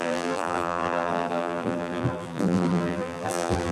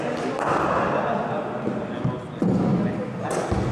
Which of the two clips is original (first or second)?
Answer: second